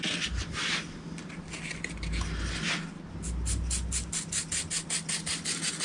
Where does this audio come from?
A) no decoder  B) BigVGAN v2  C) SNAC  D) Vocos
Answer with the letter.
A